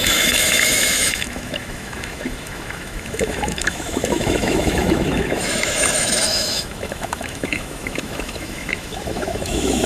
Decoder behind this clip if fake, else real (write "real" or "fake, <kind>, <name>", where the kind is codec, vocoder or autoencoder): fake, autoencoder, DAC-VAE